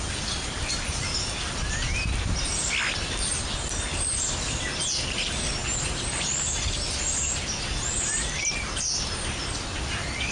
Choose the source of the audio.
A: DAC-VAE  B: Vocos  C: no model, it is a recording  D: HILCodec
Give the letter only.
C